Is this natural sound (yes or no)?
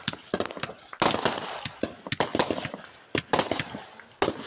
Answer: yes